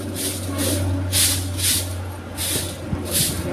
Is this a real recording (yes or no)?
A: yes